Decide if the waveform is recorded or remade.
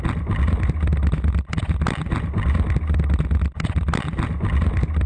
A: recorded